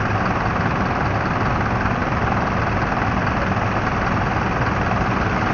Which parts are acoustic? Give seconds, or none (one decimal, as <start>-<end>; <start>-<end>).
0.0-5.5